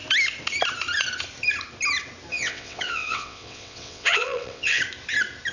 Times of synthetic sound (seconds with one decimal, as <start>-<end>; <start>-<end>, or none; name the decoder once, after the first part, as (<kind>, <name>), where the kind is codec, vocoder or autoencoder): 2.3-4.8 (vocoder, WaveNeXt)